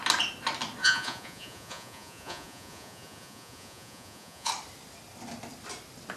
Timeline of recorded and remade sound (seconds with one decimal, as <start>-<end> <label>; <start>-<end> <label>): 0.0-0.8 recorded; 0.8-4.5 remade; 4.5-6.2 recorded